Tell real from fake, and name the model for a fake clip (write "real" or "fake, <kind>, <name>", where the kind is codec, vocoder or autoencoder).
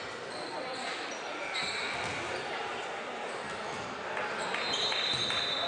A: real